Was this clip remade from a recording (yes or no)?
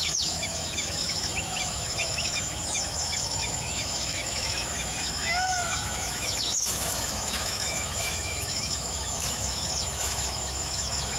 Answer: yes